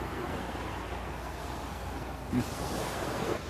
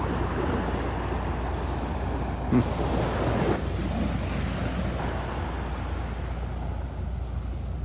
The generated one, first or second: first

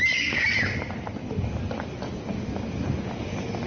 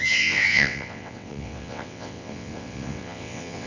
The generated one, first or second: second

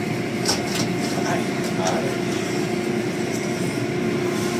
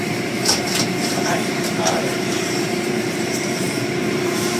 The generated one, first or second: second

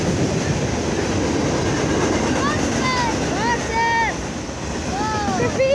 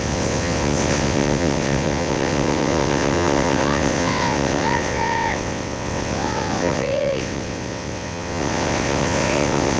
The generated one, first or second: second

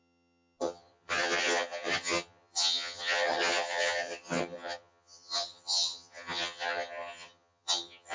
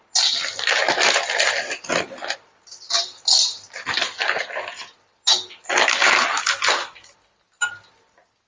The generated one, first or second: first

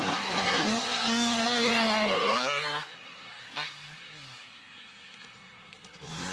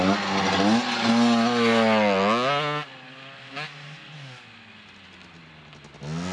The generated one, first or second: first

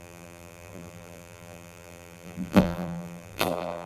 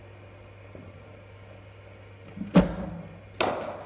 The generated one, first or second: first